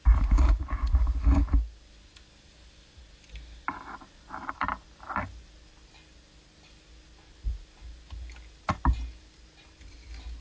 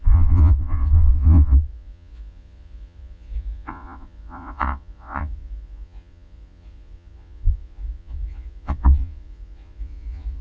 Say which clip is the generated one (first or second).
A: second